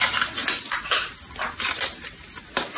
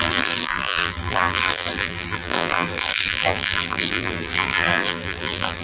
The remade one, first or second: second